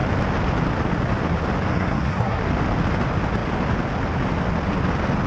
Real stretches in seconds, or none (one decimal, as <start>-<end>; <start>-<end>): 0.0-1.7; 2.4-5.3